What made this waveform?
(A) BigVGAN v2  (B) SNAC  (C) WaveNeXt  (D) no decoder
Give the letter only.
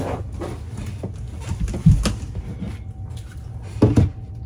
D